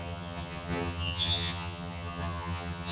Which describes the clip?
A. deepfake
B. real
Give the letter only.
A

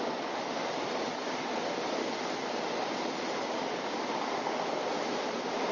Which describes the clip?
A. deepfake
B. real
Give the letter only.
B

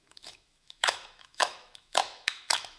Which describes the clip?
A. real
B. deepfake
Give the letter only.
B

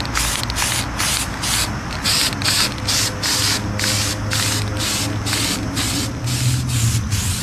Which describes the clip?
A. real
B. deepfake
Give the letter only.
A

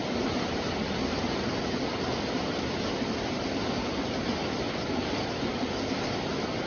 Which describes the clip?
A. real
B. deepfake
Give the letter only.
A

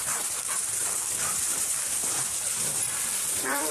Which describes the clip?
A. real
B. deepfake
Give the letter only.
B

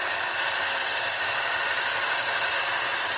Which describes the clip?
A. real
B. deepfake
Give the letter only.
B